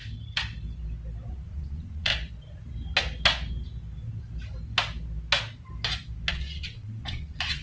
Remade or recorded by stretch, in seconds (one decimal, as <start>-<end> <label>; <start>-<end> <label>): 0.0-1.3 recorded; 1.3-2.1 remade; 2.1-6.3 recorded; 6.3-7.6 remade